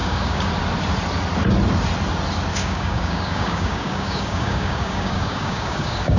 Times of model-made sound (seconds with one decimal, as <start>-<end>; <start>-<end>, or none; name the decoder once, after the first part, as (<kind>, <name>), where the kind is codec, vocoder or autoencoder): 0.0-0.5 (codec, DAC); 2.5-6.2